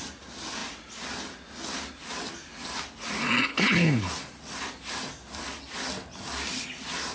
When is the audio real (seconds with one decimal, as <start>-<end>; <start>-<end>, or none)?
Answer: 0.0-3.5; 4.1-7.1